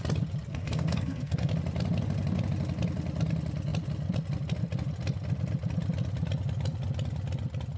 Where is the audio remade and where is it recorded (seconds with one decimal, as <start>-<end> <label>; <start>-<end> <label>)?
0.0-0.5 recorded; 0.5-1.5 remade; 1.5-7.8 recorded

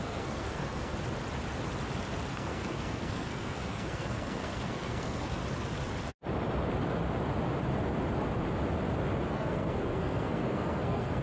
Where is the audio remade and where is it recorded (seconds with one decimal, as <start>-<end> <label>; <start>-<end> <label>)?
0.0-0.9 remade; 0.9-2.3 recorded; 2.3-5.4 remade; 5.4-9.3 recorded; 9.3-11.2 remade

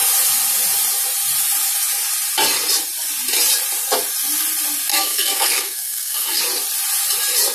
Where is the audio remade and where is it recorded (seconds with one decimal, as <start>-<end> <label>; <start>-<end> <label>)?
0.0-4.9 recorded; 4.9-6.4 remade; 6.4-7.5 recorded

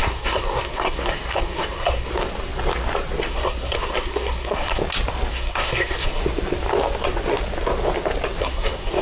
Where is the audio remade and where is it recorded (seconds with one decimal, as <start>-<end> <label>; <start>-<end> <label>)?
0.0-2.1 remade; 2.1-3.2 recorded; 3.2-4.8 remade; 4.8-5.3 recorded; 5.3-6.2 remade; 6.2-8.4 recorded; 8.4-9.0 remade

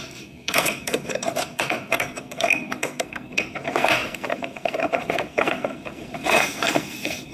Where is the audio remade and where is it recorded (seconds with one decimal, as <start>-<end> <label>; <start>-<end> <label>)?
0.0-7.3 remade

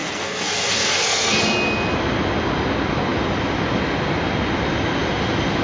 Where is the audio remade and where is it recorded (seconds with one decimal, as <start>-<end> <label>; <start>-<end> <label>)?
0.0-1.4 remade; 1.4-5.6 recorded

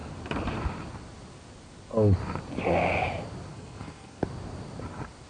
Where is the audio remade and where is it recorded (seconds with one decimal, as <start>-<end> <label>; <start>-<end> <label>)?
0.0-3.5 recorded; 3.5-4.2 remade; 4.2-5.3 recorded

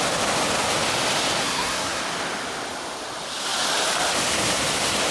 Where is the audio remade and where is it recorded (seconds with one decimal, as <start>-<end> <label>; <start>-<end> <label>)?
0.0-1.4 recorded; 1.4-2.0 remade; 2.0-5.1 recorded